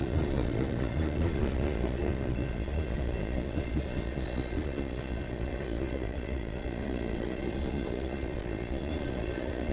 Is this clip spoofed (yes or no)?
yes